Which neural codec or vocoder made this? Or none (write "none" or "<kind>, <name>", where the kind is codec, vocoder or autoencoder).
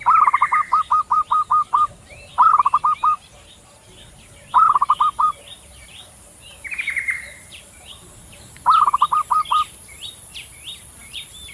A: vocoder, BigVGAN v2